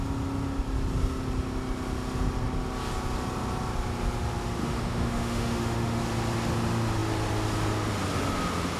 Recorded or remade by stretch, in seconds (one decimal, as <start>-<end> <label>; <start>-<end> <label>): 0.0-4.6 recorded; 4.6-6.0 remade; 6.0-8.8 recorded